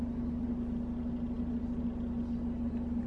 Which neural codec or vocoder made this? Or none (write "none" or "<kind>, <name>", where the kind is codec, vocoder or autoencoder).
none